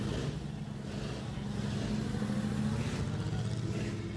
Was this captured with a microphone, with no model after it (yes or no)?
yes